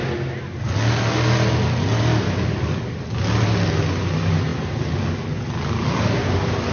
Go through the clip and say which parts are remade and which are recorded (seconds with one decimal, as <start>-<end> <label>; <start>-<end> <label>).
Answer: 0.0-6.7 recorded